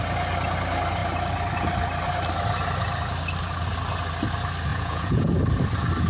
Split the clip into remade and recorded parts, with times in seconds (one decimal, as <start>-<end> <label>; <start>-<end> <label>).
0.0-4.7 recorded; 4.7-5.3 remade; 5.3-6.1 recorded